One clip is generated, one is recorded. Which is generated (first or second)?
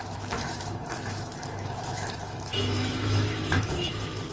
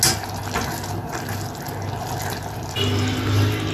first